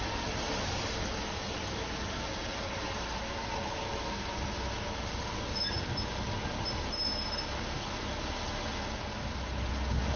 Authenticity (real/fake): real